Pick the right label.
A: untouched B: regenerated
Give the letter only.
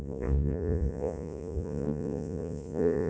B